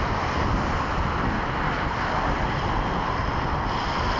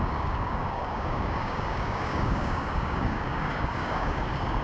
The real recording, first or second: first